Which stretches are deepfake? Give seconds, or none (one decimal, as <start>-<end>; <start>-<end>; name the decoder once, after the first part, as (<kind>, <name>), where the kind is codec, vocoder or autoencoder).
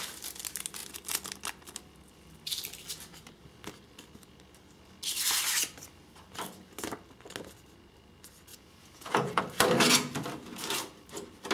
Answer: 8.5-9.4 (vocoder, Vocos)